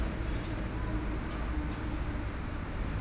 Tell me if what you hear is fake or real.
real